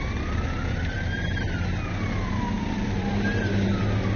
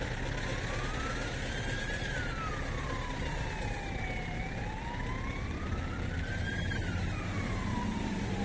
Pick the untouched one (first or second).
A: first